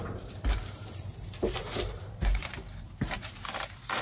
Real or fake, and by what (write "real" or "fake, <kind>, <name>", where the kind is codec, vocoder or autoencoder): fake, vocoder, BigVGAN v2